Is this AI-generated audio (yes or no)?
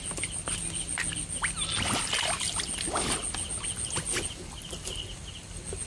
no